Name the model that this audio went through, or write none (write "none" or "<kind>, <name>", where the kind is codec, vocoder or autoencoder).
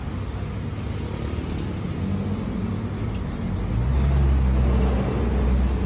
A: none